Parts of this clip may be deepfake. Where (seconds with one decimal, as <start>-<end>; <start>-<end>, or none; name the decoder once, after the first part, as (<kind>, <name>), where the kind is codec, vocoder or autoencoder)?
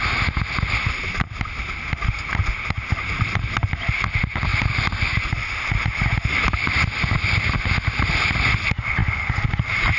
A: 9.0-10.0 (vocoder, BigVGAN v2)